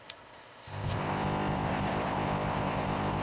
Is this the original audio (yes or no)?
no